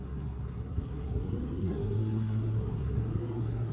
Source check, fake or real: fake